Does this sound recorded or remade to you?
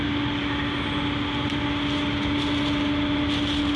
recorded